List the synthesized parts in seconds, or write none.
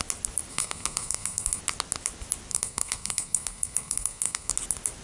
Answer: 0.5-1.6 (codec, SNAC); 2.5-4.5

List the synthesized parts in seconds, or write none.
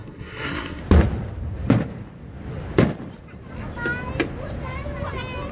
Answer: 0.0-0.8 (codec, SNAC)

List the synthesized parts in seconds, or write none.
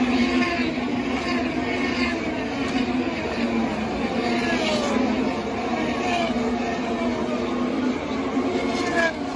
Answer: none